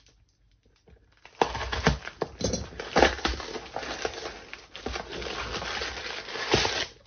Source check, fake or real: real